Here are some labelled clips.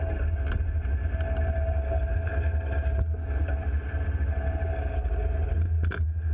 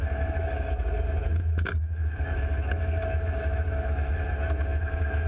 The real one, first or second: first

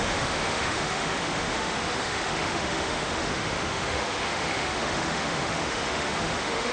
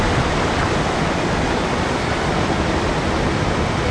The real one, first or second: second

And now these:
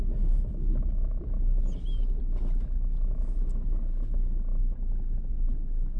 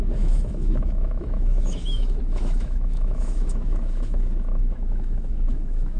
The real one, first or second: first